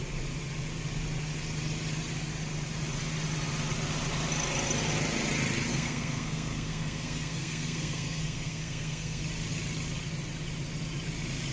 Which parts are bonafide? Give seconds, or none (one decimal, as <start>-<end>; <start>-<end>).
0.0-5.7; 9.2-11.5